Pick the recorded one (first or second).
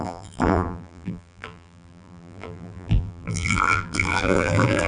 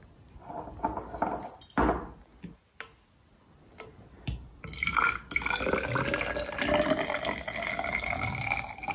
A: second